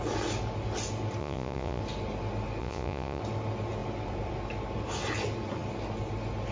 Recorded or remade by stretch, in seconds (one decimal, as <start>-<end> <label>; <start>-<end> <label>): 0.0-1.2 recorded; 1.2-1.8 remade; 1.8-2.6 recorded; 2.6-3.2 remade; 3.2-6.5 recorded

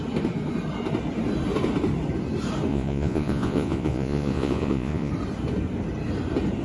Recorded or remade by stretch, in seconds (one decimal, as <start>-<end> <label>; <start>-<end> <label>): 0.0-2.7 recorded; 2.7-5.1 remade; 5.1-6.6 recorded

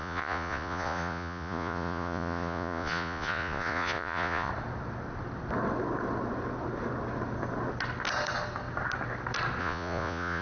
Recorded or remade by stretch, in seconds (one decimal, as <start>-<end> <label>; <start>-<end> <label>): 0.0-4.5 remade; 4.5-9.6 recorded; 9.6-10.4 remade